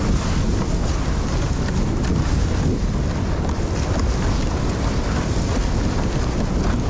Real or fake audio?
real